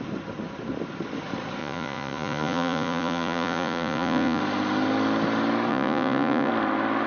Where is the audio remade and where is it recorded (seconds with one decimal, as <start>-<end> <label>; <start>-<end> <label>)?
0.0-1.6 recorded; 1.6-4.4 remade; 4.4-5.7 recorded; 5.7-6.5 remade; 6.5-7.1 recorded